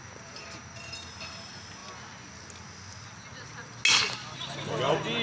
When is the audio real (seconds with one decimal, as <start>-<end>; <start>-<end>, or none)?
0.0-5.2